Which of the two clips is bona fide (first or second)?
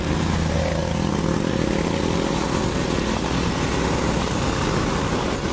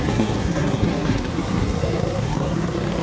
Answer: first